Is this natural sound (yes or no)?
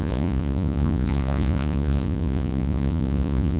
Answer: no